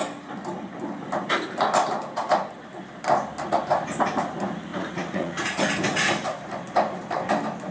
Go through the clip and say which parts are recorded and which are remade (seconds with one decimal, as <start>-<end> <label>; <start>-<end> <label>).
0.0-4.7 recorded; 4.7-5.6 remade; 5.6-7.7 recorded